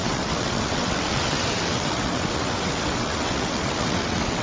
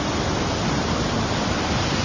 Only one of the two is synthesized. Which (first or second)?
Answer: first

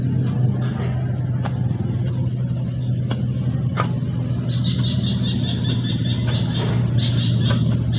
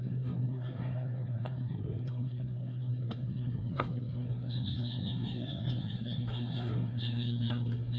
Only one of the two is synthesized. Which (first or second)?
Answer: second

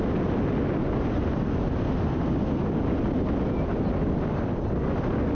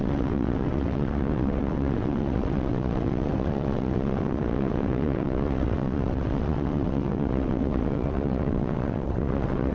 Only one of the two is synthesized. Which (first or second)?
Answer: second